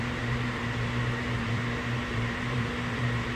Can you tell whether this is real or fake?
fake